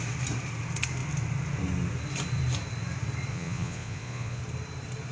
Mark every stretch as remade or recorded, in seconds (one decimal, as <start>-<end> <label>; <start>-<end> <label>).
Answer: 0.0-3.3 recorded; 3.3-4.4 remade; 4.4-5.1 recorded